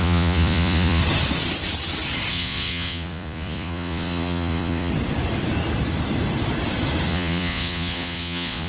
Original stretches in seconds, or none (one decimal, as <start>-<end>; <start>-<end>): 1.0-2.3; 4.9-7.1